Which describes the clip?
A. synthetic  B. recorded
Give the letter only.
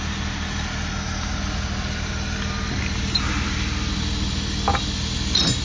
B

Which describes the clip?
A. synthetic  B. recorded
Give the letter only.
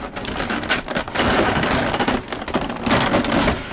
B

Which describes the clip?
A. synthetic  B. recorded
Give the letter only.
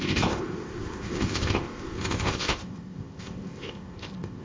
A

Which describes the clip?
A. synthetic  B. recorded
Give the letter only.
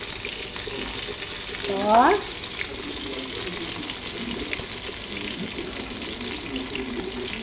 B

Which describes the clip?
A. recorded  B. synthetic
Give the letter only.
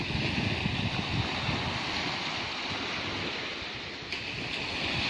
A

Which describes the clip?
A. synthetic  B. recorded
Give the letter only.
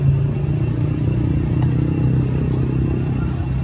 B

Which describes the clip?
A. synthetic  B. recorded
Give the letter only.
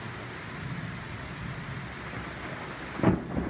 B